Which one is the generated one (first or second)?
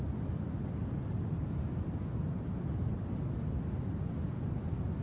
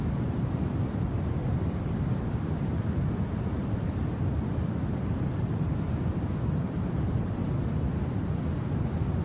second